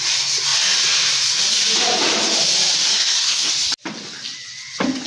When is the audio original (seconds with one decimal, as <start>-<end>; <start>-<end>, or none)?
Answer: 0.0-2.9; 3.5-5.1